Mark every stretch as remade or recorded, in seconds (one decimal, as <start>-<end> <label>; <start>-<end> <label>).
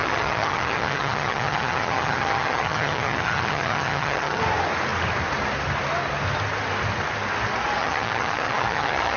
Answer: 0.0-4.4 remade; 4.4-7.8 recorded; 7.8-9.2 remade